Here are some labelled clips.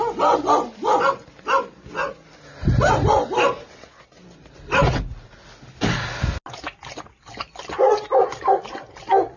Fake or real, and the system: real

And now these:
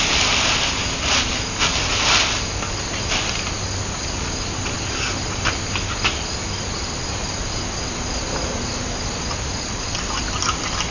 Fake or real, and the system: real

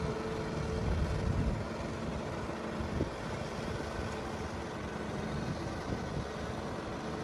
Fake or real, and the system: real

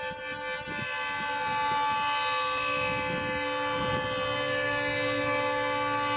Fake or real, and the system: real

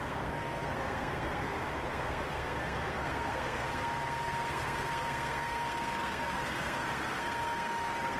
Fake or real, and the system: fake, codec, SNAC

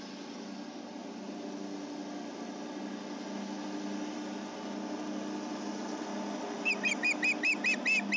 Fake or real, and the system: real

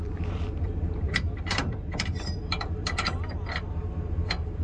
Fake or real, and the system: fake, vocoder, BigVGAN v2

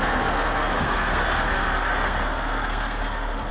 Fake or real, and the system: fake, codec, SNAC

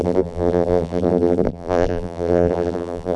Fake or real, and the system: fake, vocoder, BigVGAN v2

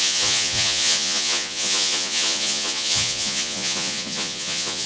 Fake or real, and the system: fake, vocoder, Vocos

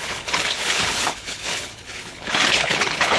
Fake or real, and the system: fake, codec, HILCodec